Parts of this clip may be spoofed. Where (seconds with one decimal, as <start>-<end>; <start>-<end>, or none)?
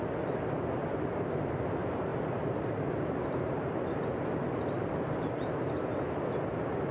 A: 0.8-1.3; 2.1-4.2